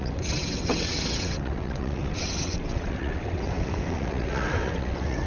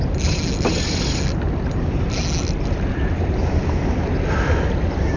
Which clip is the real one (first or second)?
second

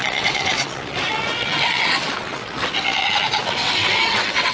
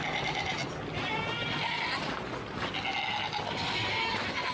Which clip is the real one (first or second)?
second